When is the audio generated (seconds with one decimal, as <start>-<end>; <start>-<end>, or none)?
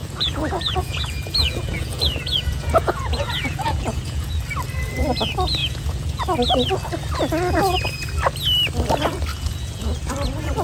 0.0-4.3; 5.6-6.2; 9.3-10.0